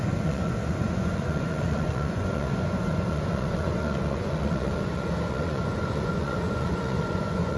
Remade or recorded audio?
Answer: remade